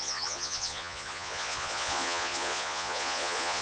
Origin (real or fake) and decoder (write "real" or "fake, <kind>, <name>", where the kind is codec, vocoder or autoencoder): fake, vocoder, Vocos